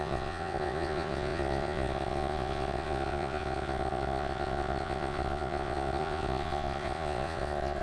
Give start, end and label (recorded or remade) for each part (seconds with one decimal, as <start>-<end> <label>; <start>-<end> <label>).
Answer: 0.0-7.8 remade